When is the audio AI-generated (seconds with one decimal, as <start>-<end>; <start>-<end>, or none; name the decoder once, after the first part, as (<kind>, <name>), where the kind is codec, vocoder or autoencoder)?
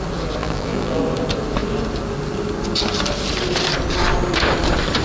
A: 0.4-1.0 (vocoder, BigVGAN v2)